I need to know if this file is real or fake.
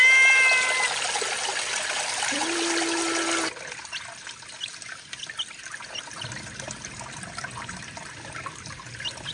real